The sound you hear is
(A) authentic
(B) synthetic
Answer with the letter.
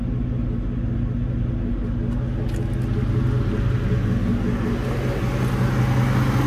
A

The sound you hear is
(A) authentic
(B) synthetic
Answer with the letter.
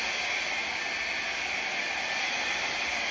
A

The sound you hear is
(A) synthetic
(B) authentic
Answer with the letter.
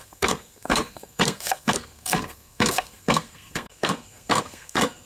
A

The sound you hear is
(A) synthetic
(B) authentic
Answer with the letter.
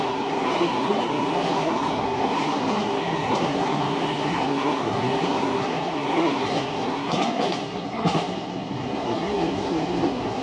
A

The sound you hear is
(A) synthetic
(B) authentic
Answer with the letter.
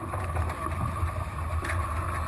B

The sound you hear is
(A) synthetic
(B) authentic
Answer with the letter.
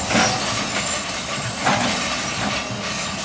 B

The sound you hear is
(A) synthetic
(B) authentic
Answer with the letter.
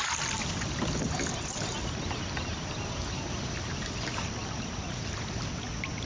B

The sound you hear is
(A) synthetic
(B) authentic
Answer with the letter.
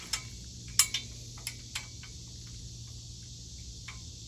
B